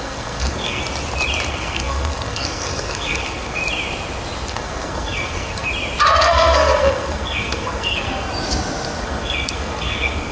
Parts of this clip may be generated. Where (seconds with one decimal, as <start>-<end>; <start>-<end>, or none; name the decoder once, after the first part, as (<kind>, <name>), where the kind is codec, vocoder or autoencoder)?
0.0-0.8 (codec, SNAC); 1.5-3.6; 4.5-5.7; 6.2-8.3; 9.0-10.3